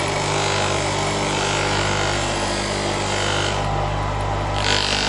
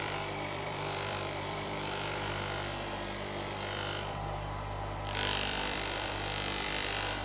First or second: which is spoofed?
second